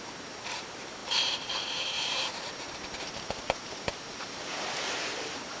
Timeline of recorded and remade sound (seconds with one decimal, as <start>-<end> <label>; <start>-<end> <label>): 0.0-5.6 remade